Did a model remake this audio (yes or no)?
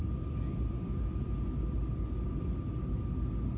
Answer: no